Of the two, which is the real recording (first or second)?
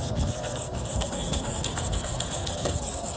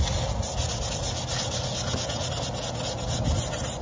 second